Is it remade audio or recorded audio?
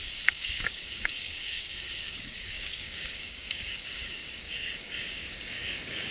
remade